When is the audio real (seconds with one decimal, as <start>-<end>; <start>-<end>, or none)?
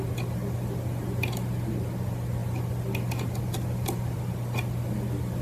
0.0-5.4